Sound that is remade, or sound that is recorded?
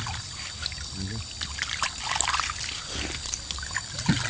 remade